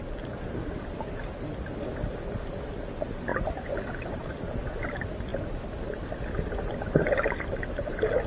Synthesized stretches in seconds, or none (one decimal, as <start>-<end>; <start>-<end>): none